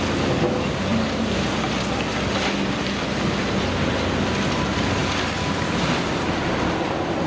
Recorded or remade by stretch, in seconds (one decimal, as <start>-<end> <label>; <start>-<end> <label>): 0.0-7.3 recorded

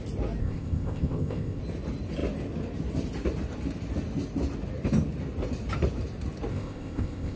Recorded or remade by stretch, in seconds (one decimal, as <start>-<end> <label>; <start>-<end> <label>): 0.0-0.4 recorded; 0.4-1.6 remade; 1.6-6.5 recorded; 6.5-7.4 remade

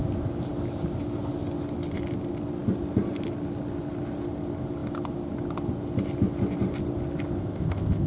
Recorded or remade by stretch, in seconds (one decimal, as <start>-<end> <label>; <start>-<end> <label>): 0.0-7.4 recorded; 7.4-8.1 remade

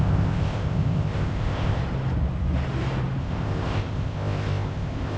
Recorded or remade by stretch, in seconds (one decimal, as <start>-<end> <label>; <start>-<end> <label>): 0.0-1.8 remade; 1.8-3.2 recorded; 3.2-5.2 remade

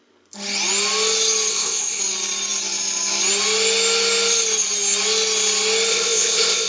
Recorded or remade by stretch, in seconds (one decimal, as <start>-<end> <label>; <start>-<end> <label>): 0.0-1.5 recorded; 1.5-2.0 remade; 2.0-5.9 recorded; 5.9-6.7 remade

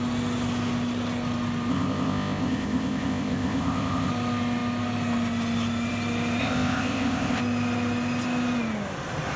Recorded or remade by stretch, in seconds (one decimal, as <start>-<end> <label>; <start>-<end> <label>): 0.0-1.7 recorded; 1.7-4.1 remade; 4.1-6.4 recorded; 6.4-7.4 remade; 7.4-9.4 recorded

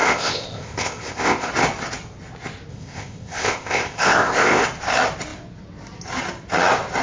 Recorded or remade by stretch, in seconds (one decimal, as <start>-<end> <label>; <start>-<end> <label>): 0.0-1.5 remade; 1.5-2.7 recorded; 2.7-4.6 remade; 4.6-7.0 recorded

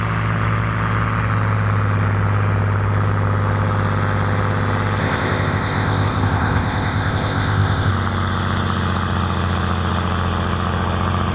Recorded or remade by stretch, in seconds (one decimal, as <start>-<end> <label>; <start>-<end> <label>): 0.0-5.0 recorded; 5.0-7.9 remade; 7.9-11.3 recorded